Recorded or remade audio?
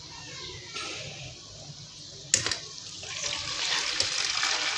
recorded